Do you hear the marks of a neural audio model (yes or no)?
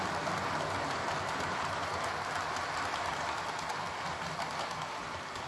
no